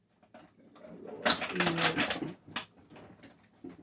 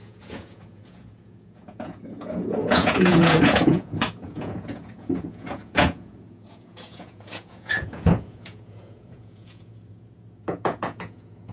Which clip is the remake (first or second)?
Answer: second